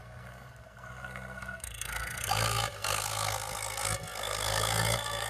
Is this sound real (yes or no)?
no